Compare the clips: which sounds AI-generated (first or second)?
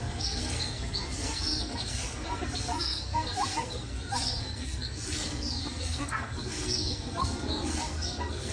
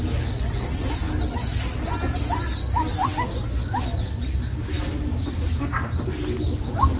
first